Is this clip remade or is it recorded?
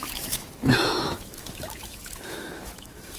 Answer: remade